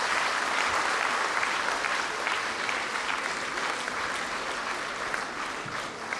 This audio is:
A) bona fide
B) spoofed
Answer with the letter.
A